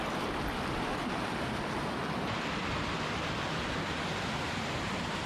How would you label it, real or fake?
real